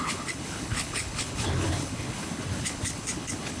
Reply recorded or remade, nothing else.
remade